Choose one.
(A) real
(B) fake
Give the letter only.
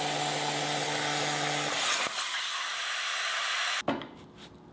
A